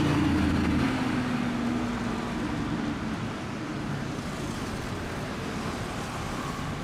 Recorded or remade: recorded